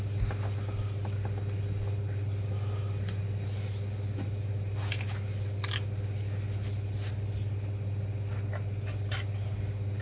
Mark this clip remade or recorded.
recorded